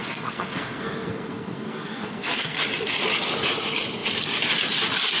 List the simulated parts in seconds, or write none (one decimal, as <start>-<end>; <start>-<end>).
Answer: 0.0-2.6